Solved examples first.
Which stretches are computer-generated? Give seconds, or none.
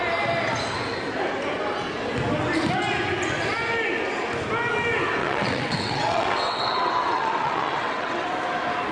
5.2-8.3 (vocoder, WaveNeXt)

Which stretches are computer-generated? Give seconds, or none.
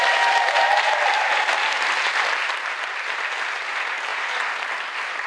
none